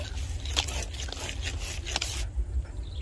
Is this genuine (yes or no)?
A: yes